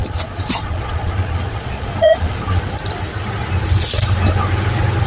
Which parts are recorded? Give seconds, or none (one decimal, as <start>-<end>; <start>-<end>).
2.6-5.1